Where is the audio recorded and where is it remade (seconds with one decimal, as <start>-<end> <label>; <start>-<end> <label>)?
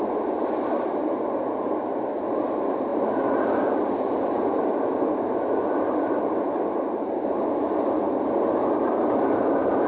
0.0-9.9 recorded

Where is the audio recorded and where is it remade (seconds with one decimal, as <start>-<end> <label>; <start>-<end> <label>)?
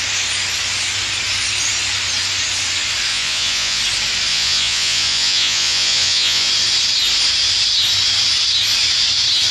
0.0-3.1 recorded; 3.1-3.8 remade; 3.8-4.3 recorded; 4.3-6.5 remade; 6.5-9.5 recorded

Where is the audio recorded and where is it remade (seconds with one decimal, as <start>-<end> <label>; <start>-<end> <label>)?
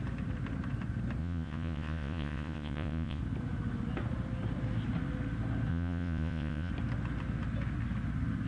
0.0-1.2 recorded; 1.2-3.2 remade; 3.2-5.7 recorded; 5.7-6.7 remade; 6.7-8.5 recorded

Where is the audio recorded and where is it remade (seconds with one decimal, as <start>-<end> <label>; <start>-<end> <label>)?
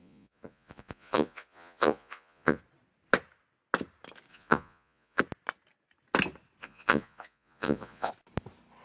0.0-2.6 remade; 2.6-4.3 recorded; 4.3-5.2 remade; 5.2-6.6 recorded; 6.6-8.1 remade; 8.1-8.8 recorded